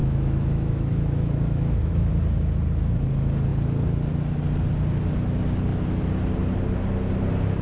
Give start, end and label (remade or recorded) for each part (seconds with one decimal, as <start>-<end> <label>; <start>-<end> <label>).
0.0-2.1 remade; 2.1-7.6 recorded

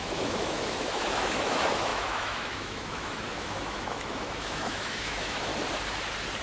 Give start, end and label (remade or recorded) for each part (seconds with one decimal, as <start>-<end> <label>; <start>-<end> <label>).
0.0-5.5 remade; 5.5-6.4 recorded

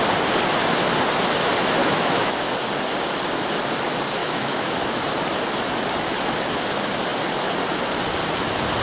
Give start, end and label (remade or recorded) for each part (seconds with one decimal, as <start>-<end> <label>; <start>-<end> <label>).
0.0-1.8 recorded; 1.8-2.5 remade; 2.5-4.2 recorded; 4.2-5.0 remade; 5.0-8.8 recorded

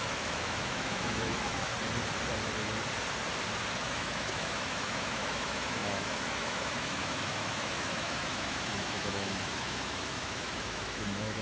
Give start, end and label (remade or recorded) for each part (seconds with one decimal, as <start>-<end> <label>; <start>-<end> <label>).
0.0-1.7 remade; 1.7-3.8 recorded; 3.8-11.4 remade

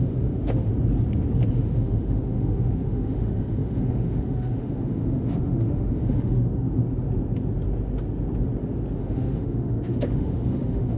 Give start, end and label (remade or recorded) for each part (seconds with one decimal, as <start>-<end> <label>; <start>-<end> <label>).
0.0-0.7 remade; 0.7-1.5 recorded; 1.5-6.8 remade; 6.8-9.0 recorded; 9.0-11.0 remade

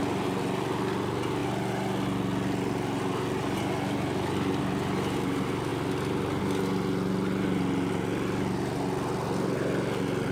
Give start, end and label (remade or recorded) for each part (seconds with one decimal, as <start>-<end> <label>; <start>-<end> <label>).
0.0-10.3 recorded

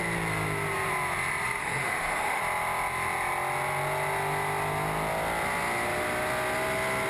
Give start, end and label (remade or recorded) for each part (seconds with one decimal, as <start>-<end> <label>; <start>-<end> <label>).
0.0-1.6 recorded; 1.6-2.4 remade; 2.4-7.1 recorded